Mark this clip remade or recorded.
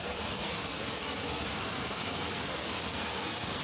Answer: remade